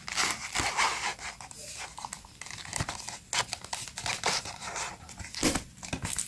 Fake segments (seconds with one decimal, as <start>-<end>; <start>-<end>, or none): none